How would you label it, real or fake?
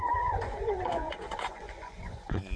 fake